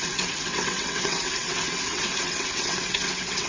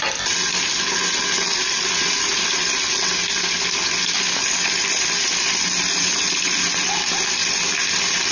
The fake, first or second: first